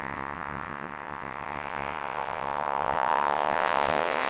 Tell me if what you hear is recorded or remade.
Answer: remade